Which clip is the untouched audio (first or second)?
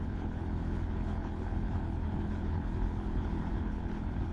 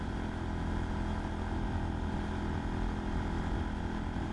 second